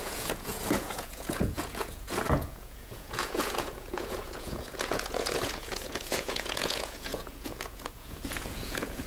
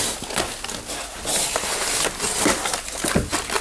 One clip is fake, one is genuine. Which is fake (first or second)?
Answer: first